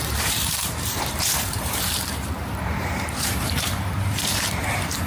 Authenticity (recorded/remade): remade